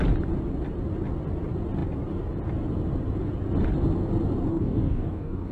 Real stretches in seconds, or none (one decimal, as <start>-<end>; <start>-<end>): 0.0-4.5